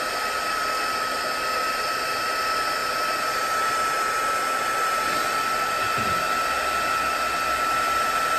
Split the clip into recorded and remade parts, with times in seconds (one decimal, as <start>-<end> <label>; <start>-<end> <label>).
0.0-8.4 recorded